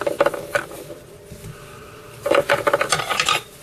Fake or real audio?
real